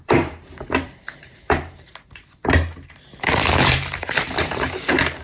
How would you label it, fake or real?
fake